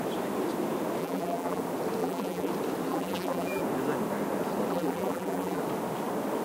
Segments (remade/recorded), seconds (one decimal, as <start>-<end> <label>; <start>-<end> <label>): 0.0-1.0 recorded; 1.0-1.6 remade; 1.6-2.0 recorded; 2.0-2.5 remade; 2.5-2.9 recorded; 2.9-3.6 remade; 3.6-4.7 recorded; 4.7-5.6 remade; 5.6-6.4 recorded